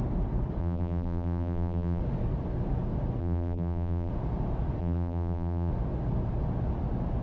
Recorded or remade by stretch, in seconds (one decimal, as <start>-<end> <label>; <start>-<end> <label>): 0.0-0.6 recorded; 0.6-2.0 remade; 2.0-3.2 recorded; 3.2-4.1 remade; 4.1-4.8 recorded; 4.8-5.7 remade; 5.7-7.2 recorded